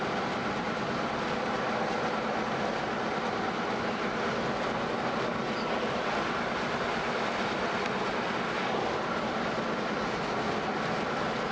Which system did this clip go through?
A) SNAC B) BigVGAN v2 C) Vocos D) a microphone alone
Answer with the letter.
D